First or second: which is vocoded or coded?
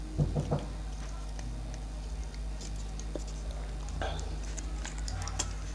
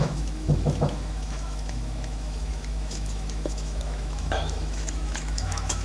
second